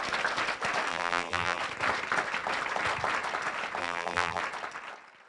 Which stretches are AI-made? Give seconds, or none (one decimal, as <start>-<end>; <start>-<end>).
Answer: 0.9-1.6; 3.8-4.4